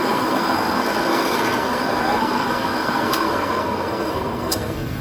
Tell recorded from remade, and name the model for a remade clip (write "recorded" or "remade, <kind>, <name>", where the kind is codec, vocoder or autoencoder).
remade, codec, SNAC